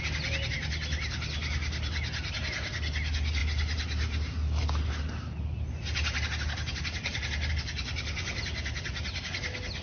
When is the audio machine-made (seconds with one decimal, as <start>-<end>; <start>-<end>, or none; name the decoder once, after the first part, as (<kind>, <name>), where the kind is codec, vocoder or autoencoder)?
none